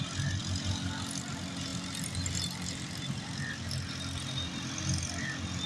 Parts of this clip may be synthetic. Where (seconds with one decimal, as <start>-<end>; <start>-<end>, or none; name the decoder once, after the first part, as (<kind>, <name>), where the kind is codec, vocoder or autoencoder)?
none